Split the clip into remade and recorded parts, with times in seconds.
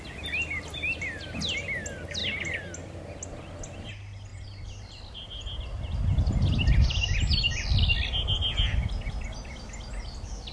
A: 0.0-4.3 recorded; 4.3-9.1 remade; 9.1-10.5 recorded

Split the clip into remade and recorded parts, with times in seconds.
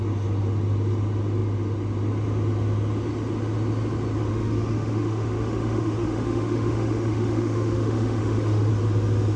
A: 0.0-4.3 recorded; 4.3-8.7 remade; 8.7-9.4 recorded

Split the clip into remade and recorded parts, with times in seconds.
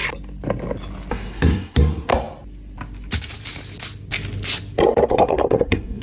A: 0.0-1.1 recorded; 1.1-2.1 remade; 2.1-5.1 recorded; 5.1-6.0 remade